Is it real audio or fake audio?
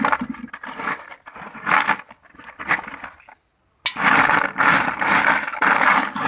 real